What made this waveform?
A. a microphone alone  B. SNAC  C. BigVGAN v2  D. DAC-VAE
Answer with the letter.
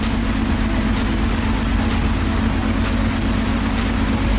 A